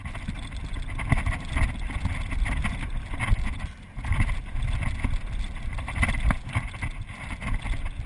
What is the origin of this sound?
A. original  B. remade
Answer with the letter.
A